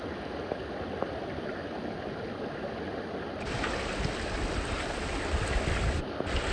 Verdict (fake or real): real